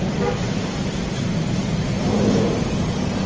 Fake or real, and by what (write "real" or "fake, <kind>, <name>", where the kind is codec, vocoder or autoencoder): real